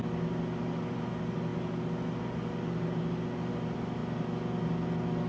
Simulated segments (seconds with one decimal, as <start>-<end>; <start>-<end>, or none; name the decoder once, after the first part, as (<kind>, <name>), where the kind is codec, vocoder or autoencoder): none